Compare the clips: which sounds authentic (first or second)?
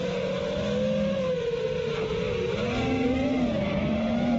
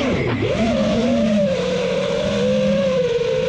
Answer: first